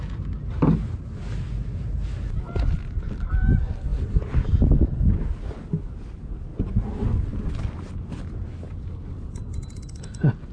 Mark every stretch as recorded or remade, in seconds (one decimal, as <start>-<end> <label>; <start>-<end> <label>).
0.0-10.5 recorded

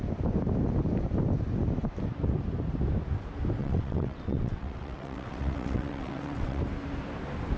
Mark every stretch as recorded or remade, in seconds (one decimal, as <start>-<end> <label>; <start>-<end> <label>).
0.0-3.6 recorded; 3.6-6.6 remade; 6.6-7.6 recorded